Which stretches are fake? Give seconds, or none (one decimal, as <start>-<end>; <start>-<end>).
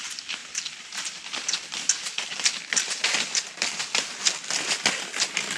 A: none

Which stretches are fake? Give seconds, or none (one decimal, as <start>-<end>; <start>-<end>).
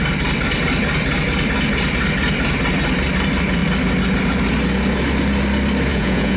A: 5.9-6.4